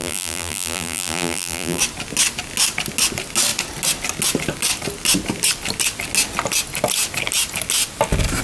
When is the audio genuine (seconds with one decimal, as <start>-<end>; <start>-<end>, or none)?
1.8-8.4